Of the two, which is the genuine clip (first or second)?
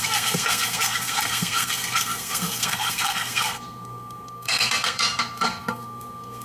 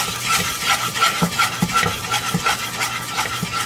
second